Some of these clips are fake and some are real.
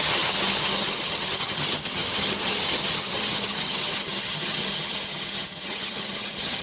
fake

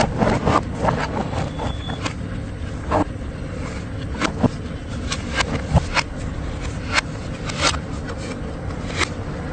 real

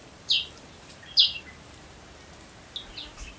real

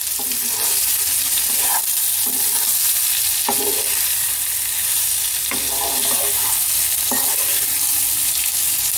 real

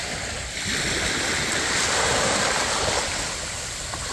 real